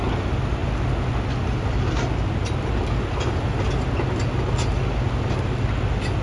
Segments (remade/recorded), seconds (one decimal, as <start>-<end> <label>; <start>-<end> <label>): 0.0-6.2 recorded